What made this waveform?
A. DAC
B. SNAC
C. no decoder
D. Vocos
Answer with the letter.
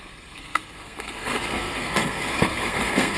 B